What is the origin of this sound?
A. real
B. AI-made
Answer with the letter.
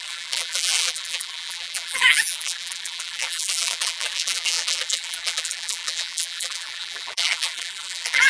B